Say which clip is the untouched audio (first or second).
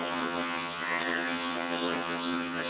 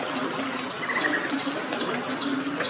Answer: second